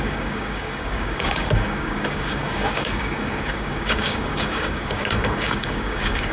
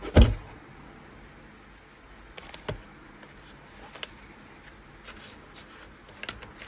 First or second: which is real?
second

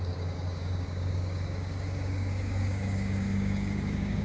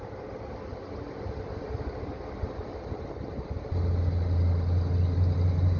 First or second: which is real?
second